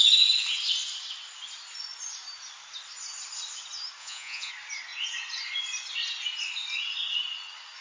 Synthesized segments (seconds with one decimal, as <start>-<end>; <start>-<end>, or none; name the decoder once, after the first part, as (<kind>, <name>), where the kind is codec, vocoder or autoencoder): 4.0-4.5 (vocoder, Vocos)